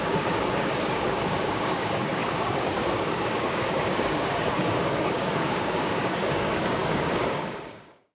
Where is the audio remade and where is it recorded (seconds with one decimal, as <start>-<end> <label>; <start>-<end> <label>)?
0.0-8.1 remade